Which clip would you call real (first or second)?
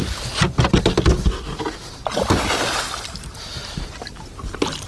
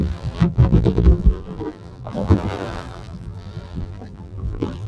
first